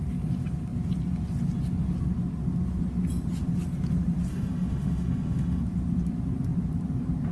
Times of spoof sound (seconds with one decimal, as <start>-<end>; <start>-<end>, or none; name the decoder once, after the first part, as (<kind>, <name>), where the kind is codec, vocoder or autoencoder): 4.3-5.6 (autoencoder, DAC-VAE)